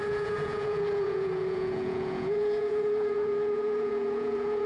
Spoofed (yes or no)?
yes